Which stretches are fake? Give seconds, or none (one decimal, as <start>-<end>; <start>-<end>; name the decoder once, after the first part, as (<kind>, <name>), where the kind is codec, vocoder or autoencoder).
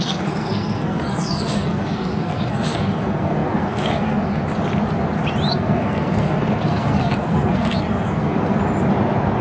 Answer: 0.0-4.4 (codec, SNAC); 5.5-8.6